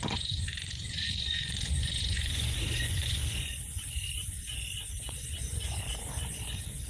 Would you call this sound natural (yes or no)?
no